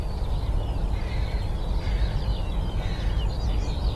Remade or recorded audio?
recorded